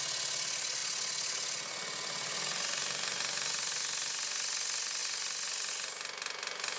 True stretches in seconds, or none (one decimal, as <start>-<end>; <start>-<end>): 0.0-6.8